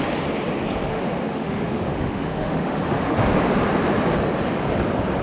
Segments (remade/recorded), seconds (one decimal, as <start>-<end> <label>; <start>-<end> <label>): 0.0-0.9 recorded; 0.9-3.4 remade; 3.4-5.2 recorded